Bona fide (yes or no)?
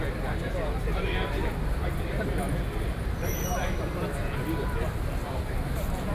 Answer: yes